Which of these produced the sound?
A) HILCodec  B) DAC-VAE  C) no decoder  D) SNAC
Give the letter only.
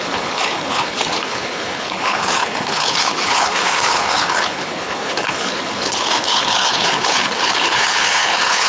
A